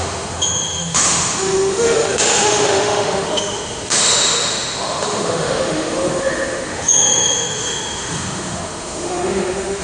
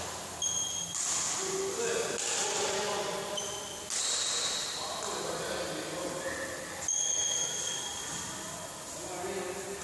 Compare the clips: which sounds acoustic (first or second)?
second